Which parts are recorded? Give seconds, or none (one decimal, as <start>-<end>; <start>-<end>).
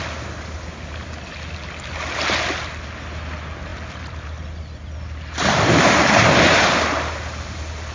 0.0-7.9